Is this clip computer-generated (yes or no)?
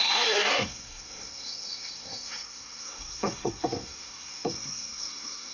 yes